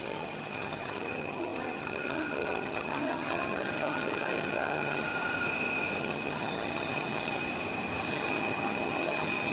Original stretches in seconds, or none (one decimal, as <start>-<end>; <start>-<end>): 5.1-6.0; 7.5-8.1